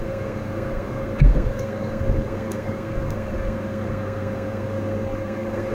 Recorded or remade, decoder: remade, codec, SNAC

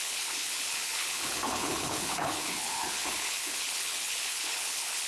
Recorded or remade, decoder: remade, codec, HILCodec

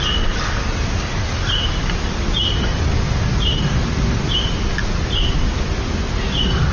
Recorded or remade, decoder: recorded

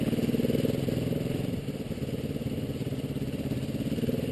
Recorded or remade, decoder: recorded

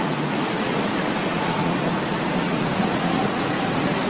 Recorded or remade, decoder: remade, vocoder, Vocos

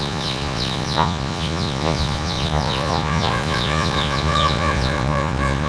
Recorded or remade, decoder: remade, vocoder, Vocos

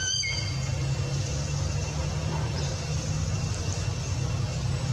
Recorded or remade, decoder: recorded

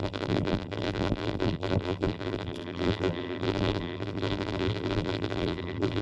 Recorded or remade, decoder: remade, vocoder, BigVGAN v2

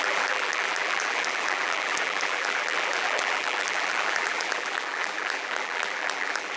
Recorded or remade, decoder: remade, vocoder, BigVGAN v2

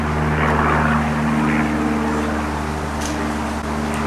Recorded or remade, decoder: recorded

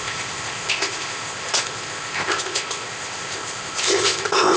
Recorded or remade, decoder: remade, codec, ZipCodec